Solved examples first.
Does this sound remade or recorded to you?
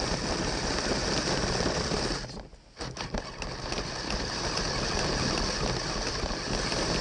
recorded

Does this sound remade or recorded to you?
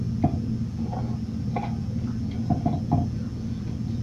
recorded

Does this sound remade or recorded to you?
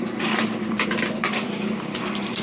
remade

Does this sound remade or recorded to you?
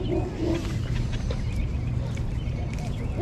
recorded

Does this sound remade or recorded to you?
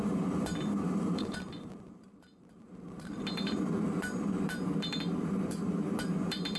remade